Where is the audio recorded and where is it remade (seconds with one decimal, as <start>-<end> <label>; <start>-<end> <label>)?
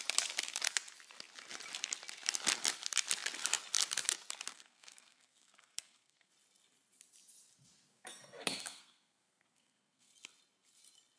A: 0.0-4.5 recorded; 4.5-6.3 remade; 6.3-7.9 recorded; 7.9-10.1 remade; 10.1-11.2 recorded